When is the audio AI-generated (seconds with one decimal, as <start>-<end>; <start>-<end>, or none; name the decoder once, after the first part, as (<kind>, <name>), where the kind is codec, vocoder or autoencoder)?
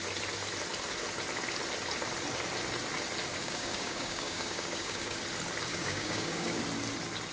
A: 3.4-5.2 (codec, DAC); 5.7-6.6